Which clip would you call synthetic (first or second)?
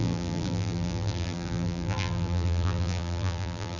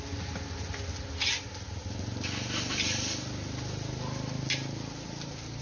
first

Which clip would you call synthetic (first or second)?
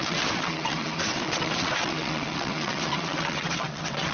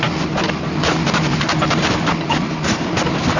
first